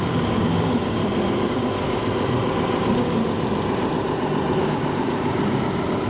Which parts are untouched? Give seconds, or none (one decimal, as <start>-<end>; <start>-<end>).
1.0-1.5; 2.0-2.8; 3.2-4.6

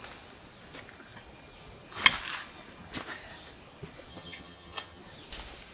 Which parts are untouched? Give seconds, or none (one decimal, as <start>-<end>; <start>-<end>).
0.0-4.1; 5.0-5.7

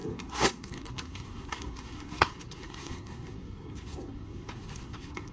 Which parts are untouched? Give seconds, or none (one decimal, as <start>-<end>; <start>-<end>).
none

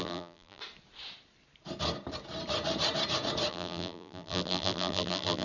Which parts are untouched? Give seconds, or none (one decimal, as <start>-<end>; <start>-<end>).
0.6-3.5

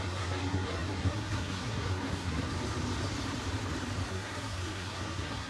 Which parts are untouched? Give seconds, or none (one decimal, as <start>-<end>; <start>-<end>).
2.5-4.1